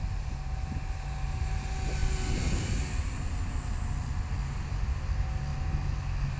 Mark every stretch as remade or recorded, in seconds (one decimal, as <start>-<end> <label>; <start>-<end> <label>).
0.0-6.4 recorded